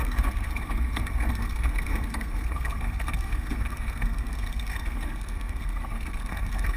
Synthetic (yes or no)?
yes